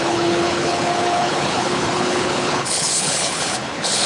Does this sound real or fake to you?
fake